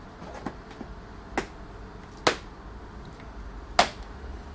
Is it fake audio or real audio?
real